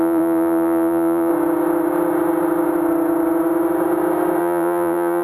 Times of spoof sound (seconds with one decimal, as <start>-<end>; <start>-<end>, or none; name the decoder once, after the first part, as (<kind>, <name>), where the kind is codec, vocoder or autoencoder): 0.0-1.3 (vocoder, BigVGAN v2); 4.4-5.2